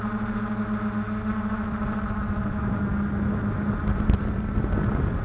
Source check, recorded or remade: recorded